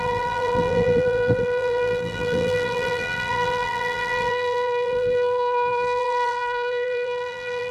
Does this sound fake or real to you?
fake